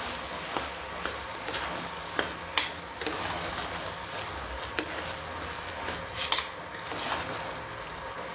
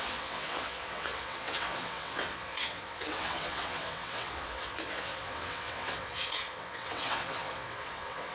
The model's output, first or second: second